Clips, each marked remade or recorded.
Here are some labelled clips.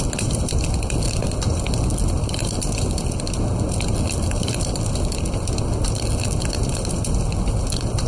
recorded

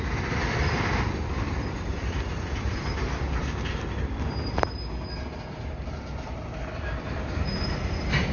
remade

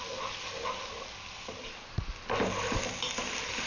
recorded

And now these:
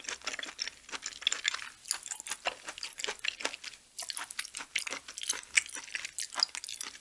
recorded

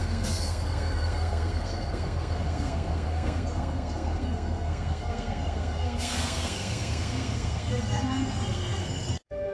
remade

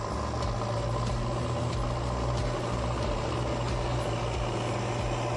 recorded